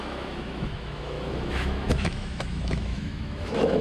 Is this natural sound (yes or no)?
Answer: no